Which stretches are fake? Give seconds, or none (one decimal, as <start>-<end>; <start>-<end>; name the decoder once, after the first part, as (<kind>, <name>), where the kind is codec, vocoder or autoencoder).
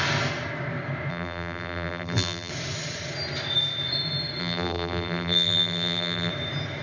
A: 1.1-2.5 (vocoder, BigVGAN v2); 4.4-6.3